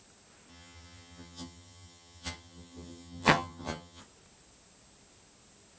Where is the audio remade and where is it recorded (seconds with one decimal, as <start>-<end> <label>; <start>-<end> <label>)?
0.0-0.5 recorded; 0.5-4.0 remade; 4.0-5.8 recorded